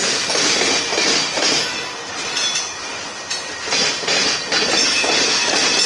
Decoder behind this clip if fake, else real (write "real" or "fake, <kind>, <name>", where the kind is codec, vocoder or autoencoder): real